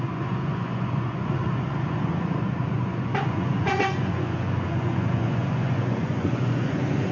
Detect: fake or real fake